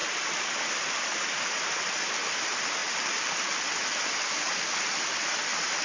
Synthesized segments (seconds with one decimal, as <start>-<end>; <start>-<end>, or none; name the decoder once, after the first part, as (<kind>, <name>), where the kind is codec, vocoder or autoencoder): none